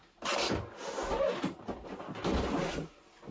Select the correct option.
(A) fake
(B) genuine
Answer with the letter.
B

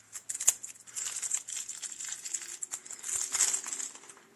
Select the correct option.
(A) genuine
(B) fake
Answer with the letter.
A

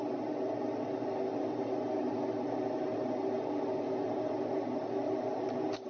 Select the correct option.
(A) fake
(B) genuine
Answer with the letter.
B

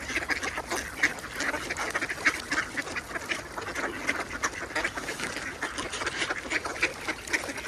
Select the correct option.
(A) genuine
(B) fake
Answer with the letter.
A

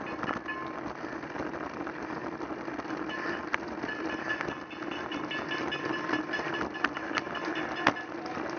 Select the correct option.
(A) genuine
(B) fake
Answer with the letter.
A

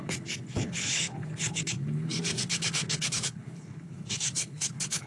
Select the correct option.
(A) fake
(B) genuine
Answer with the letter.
A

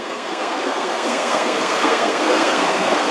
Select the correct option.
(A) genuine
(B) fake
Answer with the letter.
B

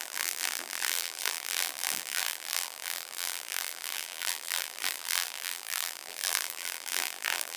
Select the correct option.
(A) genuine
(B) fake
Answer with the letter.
B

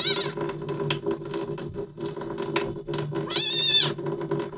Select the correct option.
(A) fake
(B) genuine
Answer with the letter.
B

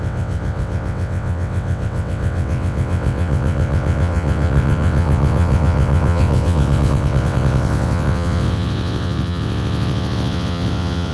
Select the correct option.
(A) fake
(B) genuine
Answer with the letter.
A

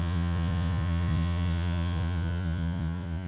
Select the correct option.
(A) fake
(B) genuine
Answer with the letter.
A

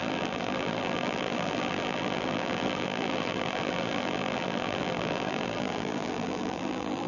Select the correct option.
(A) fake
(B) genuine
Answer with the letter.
A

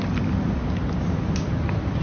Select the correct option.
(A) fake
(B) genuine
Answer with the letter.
B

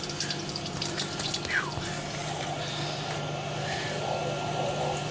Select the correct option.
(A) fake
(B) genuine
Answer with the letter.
B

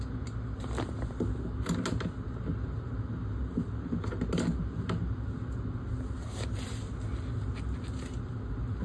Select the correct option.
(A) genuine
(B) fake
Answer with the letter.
A